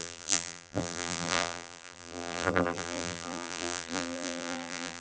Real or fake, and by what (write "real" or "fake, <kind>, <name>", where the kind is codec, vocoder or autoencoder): fake, vocoder, BigVGAN v2